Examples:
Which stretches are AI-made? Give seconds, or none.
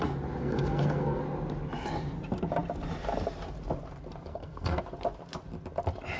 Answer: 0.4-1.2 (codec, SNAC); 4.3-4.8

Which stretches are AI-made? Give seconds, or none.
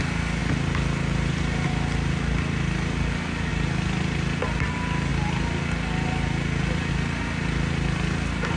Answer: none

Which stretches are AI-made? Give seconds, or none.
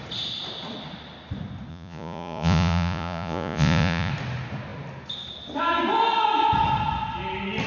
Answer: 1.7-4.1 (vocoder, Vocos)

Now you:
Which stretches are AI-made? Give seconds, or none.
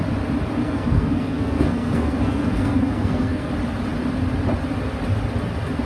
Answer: 0.6-3.5 (codec, SNAC)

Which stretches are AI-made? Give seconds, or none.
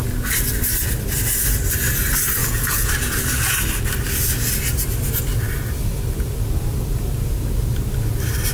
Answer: 2.4-2.9 (vocoder, Vocos)